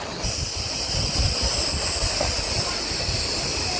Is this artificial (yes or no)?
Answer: no